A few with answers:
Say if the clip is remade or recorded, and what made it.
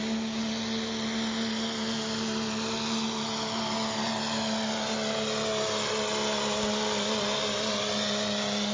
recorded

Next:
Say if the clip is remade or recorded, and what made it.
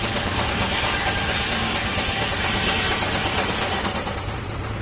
recorded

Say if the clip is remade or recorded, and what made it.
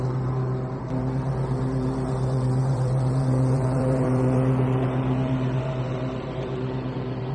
remade, vocoder, BigVGAN v2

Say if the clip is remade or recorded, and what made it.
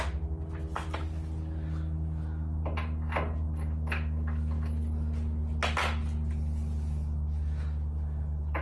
recorded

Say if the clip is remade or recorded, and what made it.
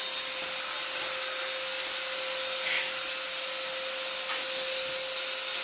recorded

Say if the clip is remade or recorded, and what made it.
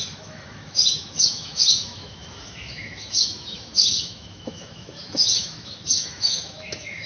remade, autoencoder, DAC-VAE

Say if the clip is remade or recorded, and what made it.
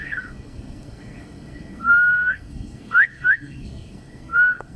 remade, codec, SNAC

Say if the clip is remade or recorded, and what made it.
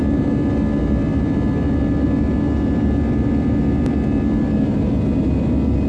recorded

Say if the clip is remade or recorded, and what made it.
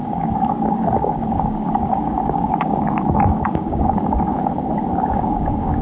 remade, codec, DAC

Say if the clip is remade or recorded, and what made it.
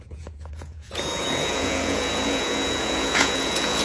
remade, vocoder, Vocos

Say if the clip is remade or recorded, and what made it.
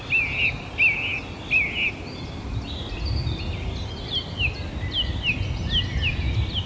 recorded